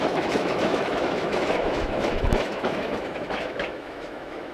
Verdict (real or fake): fake